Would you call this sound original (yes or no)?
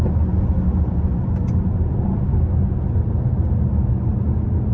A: yes